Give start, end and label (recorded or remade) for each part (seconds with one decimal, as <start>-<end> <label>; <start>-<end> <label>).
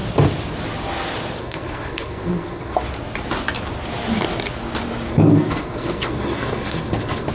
0.0-1.4 recorded; 1.4-2.8 remade; 2.8-5.1 recorded; 5.1-7.3 remade